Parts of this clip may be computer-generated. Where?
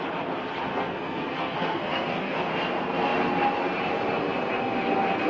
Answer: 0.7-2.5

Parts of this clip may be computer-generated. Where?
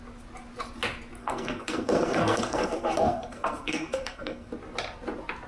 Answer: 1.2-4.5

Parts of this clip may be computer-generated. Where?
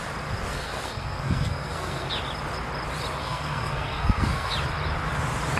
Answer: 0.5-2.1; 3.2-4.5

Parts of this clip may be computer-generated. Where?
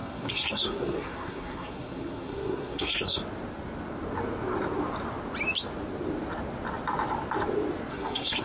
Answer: 0.0-3.2; 7.9-8.4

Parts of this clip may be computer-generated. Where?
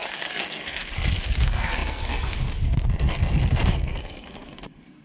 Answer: 0.0-5.0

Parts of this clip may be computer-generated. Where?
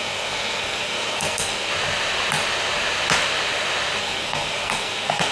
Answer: 0.0-1.7; 4.0-5.3